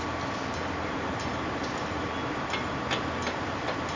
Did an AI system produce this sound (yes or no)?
no